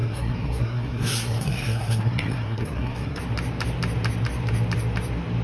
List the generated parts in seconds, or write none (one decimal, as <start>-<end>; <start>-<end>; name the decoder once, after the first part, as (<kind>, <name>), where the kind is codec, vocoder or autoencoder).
0.0-3.2 (codec, SNAC)